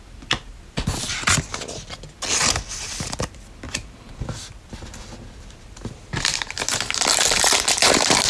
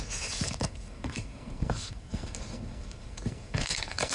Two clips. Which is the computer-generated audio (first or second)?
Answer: second